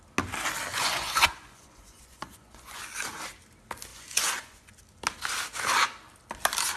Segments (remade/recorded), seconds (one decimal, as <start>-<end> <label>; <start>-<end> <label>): 0.0-0.7 recorded; 0.7-2.8 remade; 2.8-3.9 recorded; 3.9-4.7 remade; 4.7-6.8 recorded